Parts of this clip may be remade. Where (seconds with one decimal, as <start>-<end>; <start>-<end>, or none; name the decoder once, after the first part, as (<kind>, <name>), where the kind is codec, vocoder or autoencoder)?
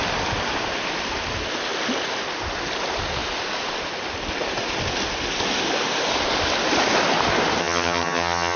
7.6-8.6 (vocoder, HiFi-GAN)